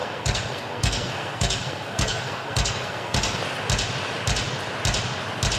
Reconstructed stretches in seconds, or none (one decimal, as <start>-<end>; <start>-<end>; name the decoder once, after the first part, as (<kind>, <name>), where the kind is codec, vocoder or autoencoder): 0.0-3.4 (codec, SNAC)